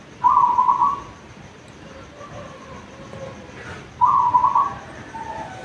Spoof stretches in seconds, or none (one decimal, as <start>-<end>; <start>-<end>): none